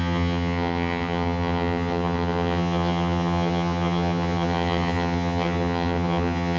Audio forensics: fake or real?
fake